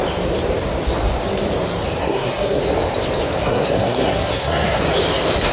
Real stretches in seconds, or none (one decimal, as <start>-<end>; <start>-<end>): 0.0-2.0; 2.6-3.4; 4.8-5.5